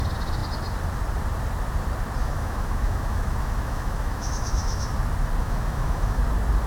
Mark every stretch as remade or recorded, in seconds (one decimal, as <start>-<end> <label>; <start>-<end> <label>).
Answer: 0.0-2.2 recorded; 2.2-4.9 remade; 4.9-5.4 recorded; 5.4-6.2 remade; 6.2-6.7 recorded